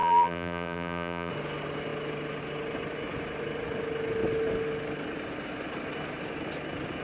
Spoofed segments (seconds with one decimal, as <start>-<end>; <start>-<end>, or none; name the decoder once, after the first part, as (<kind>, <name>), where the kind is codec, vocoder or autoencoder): 0.0-1.3 (vocoder, BigVGAN v2)